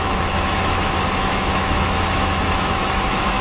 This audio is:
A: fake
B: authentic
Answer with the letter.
A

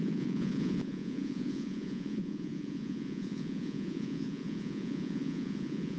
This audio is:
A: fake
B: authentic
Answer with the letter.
A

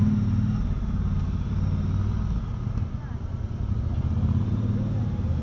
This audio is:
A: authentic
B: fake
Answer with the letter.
A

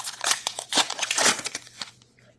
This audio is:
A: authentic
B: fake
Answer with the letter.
B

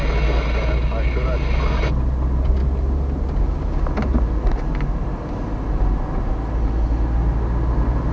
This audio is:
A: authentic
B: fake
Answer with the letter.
A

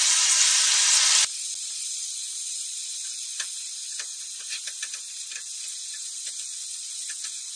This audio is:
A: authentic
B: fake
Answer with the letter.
A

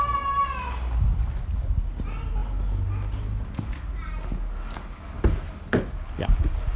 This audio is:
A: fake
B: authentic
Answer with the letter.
B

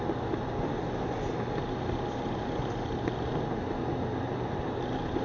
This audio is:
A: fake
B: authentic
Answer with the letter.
B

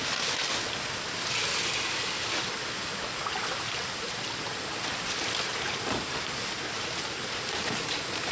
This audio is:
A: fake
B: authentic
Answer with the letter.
B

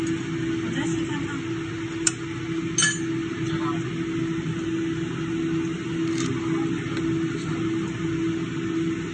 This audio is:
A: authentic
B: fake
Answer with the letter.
A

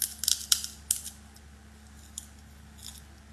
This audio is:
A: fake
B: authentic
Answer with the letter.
B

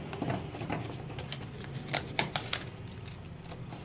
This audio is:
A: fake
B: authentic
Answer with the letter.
B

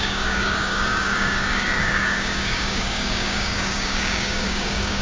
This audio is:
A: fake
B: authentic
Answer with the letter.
A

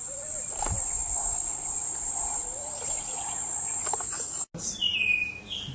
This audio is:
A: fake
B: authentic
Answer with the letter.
B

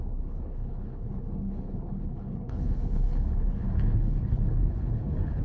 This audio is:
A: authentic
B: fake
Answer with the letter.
B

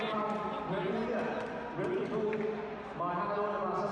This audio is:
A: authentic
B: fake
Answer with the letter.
A